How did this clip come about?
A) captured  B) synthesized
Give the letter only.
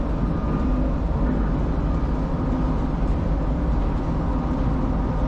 A